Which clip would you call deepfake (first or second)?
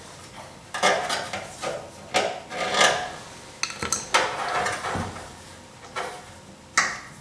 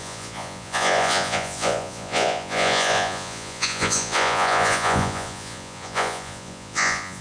second